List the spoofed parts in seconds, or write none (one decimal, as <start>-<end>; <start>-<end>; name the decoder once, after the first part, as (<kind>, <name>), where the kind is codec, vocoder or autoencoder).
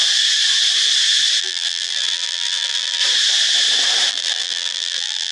1.4-3.0 (vocoder, BigVGAN v2); 4.1-5.3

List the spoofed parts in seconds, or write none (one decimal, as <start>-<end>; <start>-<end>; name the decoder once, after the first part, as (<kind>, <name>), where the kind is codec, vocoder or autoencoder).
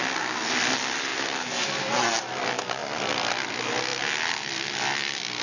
none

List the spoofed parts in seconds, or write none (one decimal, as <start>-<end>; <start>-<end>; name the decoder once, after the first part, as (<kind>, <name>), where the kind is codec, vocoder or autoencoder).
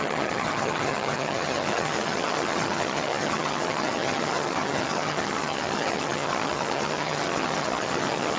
0.0-8.4 (vocoder, HiFi-GAN)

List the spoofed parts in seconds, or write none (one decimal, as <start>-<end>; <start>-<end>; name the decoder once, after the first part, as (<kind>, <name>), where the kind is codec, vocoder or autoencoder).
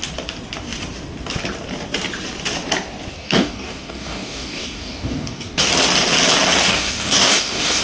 3.1-5.7 (codec, DAC); 6.7-7.8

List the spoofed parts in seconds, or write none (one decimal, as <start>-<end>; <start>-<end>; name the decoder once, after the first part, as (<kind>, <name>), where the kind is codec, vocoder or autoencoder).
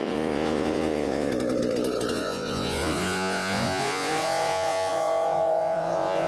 0.0-1.3 (vocoder, Vocos); 2.1-6.3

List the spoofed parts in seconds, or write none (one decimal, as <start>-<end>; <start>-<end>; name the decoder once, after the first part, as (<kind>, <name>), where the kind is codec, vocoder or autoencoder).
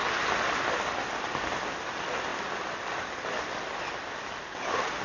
none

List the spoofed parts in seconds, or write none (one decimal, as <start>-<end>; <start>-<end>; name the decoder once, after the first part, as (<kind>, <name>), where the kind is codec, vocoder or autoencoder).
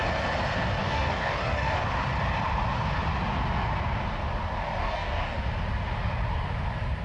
0.8-1.8 (codec, DAC); 4.8-5.4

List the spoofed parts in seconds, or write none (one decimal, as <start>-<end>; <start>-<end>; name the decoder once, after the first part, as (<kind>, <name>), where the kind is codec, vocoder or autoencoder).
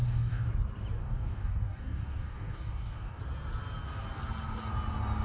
0.0-0.5 (codec, DAC); 1.0-3.2